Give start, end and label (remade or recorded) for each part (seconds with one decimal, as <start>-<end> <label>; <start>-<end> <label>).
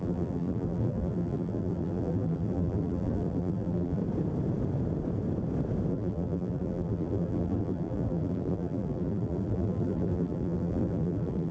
0.0-4.0 remade; 4.0-5.9 recorded; 5.9-11.5 remade